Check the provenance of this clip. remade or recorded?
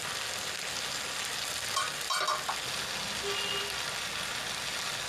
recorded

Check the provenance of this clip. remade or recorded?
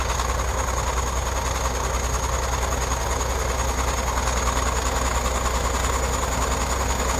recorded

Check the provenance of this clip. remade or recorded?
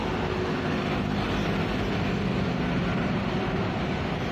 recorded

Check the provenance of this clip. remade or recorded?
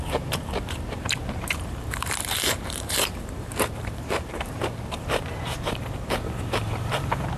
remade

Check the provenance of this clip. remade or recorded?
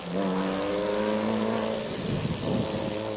recorded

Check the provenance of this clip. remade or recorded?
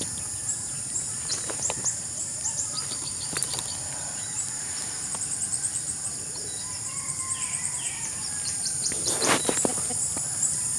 remade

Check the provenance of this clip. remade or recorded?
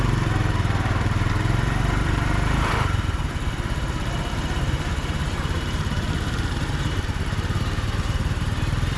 remade